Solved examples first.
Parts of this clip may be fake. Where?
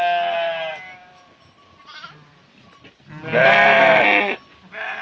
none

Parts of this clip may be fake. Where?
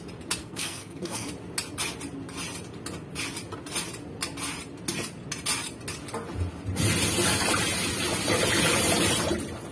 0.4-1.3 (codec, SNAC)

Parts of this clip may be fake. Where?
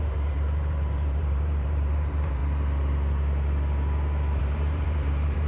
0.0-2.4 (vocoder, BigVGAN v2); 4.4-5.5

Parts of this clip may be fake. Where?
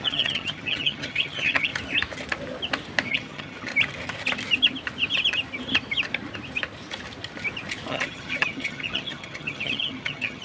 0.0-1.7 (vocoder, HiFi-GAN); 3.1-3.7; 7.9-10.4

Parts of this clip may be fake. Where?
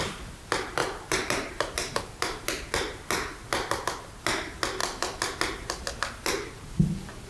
0.8-2.5 (vocoder, BigVGAN v2)